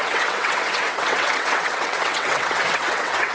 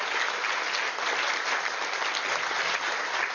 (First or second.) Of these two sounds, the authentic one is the second